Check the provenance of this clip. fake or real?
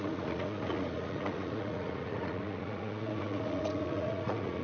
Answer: fake